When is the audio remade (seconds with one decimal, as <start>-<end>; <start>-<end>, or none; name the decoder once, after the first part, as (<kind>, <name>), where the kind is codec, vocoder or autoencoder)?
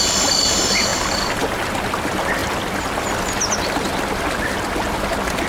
none